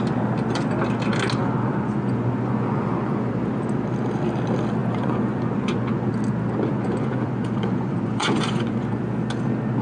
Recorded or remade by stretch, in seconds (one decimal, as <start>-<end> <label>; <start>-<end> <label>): 0.0-1.4 recorded; 1.4-3.3 remade; 3.3-4.8 recorded; 4.8-6.1 remade; 6.1-6.7 recorded; 6.7-9.0 remade; 9.0-9.8 recorded